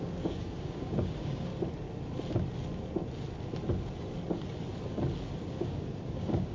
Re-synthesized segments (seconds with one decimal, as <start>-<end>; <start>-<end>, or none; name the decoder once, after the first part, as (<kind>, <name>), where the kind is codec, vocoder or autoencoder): 0.0-1.5 (codec, DAC); 5.4-6.5